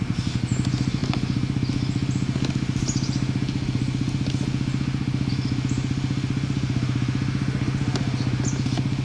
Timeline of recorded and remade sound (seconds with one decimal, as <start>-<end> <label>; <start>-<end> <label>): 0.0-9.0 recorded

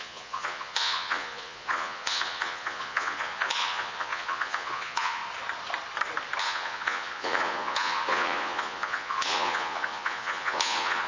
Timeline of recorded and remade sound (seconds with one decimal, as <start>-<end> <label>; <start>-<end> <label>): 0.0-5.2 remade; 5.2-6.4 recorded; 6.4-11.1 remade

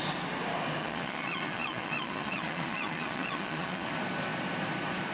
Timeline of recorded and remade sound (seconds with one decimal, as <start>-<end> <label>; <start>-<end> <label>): 0.0-0.8 recorded; 0.8-3.9 remade; 3.9-5.1 recorded

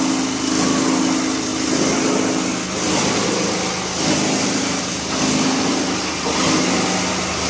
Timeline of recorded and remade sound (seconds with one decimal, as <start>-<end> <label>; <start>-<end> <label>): 0.0-7.5 recorded

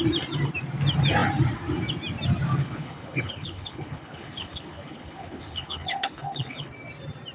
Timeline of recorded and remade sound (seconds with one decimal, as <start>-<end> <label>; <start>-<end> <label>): 0.0-2.6 recorded; 2.6-6.7 remade; 6.7-7.3 recorded

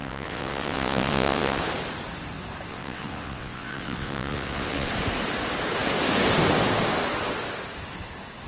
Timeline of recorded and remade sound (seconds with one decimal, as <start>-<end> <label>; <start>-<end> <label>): 0.0-1.6 remade; 1.6-2.7 recorded; 2.7-4.9 remade; 4.9-8.5 recorded